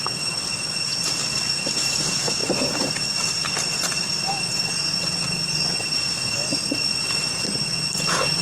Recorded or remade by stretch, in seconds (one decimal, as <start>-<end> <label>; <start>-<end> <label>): 0.0-8.4 recorded